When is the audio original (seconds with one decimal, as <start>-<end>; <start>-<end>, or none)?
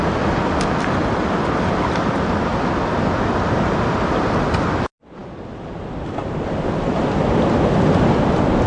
0.0-8.7